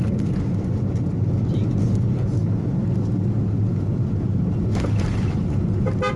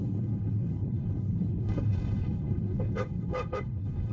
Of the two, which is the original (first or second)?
first